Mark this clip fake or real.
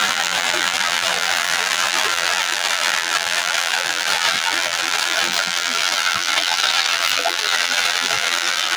fake